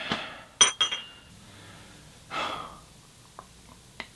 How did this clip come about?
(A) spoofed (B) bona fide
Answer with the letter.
B